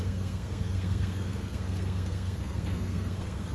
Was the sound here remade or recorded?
remade